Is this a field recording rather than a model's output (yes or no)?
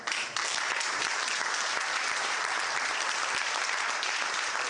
no